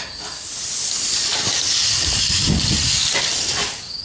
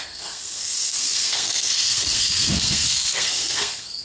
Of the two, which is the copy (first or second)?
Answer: second